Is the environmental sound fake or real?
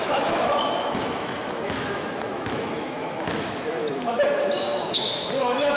fake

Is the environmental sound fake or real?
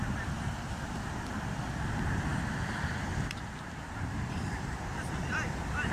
real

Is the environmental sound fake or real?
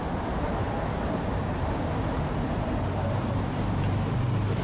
fake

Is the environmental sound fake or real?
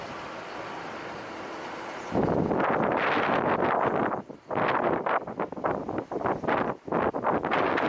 real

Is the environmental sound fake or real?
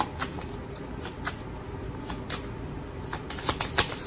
real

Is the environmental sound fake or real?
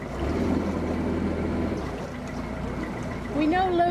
real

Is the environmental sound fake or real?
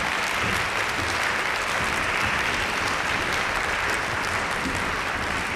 fake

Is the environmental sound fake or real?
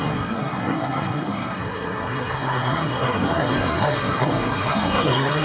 fake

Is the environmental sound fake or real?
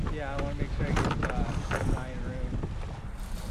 real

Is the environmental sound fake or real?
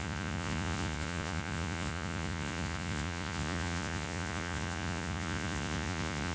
fake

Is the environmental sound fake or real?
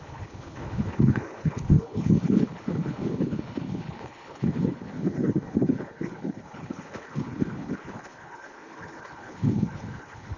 fake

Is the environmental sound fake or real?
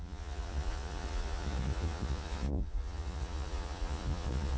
fake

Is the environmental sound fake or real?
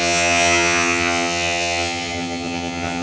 fake